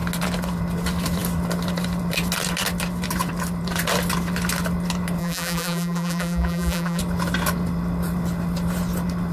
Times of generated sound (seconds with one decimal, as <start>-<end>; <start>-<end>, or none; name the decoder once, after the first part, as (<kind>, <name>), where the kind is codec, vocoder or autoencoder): 5.2-7.0 (vocoder, BigVGAN v2)

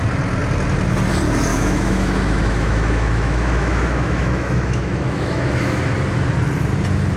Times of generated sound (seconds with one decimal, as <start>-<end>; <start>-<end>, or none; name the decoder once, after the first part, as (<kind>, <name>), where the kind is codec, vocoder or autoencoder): 1.5-5.8 (autoencoder, DAC-VAE)

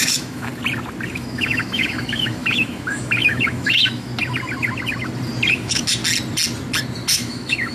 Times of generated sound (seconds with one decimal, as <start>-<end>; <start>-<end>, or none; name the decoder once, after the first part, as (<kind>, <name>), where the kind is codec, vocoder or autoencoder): 0.0-0.5 (autoencoder, DAC-VAE); 1.1-4.1; 5.5-6.0; 7.1-7.7

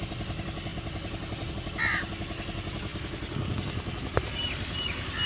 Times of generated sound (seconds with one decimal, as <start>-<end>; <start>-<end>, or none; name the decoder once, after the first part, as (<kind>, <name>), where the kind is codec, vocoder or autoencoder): none